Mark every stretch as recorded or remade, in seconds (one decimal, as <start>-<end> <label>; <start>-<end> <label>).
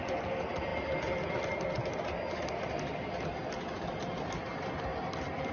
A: 0.0-5.5 recorded